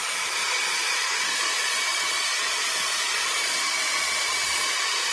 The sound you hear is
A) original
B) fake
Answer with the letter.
B